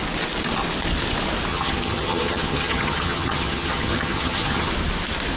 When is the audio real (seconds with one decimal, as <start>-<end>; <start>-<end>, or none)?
0.0-1.5; 4.7-5.4

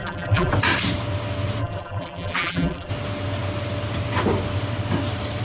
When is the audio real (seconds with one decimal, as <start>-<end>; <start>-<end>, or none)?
0.5-1.6; 2.9-5.4

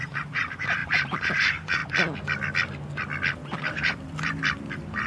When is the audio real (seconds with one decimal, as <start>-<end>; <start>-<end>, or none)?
1.8-3.6

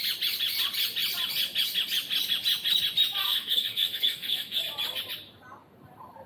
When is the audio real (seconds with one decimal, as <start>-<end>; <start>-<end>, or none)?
0.0-3.2; 4.6-6.3